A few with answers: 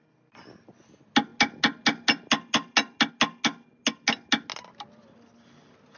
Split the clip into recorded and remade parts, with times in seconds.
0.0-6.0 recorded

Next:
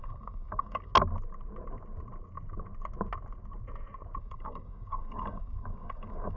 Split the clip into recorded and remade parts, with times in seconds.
0.0-0.9 remade; 0.9-4.2 recorded; 4.2-6.4 remade